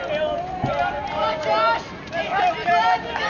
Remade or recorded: recorded